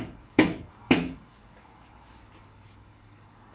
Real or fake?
fake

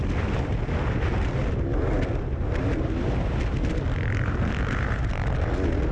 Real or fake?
real